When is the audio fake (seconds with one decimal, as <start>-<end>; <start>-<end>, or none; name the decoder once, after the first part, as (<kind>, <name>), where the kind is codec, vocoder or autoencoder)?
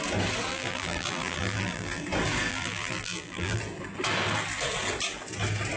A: 0.5-2.0 (vocoder, BigVGAN v2); 2.5-3.6